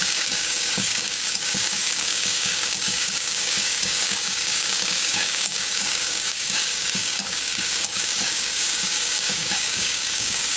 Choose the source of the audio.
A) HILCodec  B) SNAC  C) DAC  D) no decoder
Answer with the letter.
C